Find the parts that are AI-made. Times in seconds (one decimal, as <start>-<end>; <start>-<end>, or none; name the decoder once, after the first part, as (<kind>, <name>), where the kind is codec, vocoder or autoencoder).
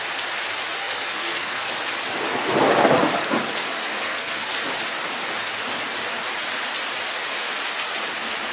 0.8-1.7 (codec, SNAC); 3.9-4.5